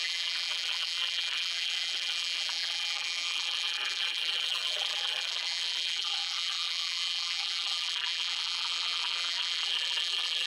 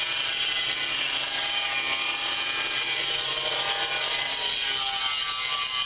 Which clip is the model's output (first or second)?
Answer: first